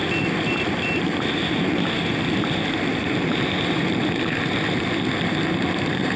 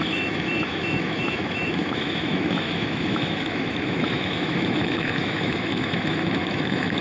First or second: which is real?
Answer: first